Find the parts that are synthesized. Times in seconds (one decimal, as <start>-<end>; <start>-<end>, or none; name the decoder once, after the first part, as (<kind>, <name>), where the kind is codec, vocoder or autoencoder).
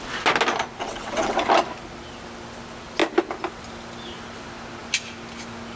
0.8-1.5 (vocoder, WaveNeXt)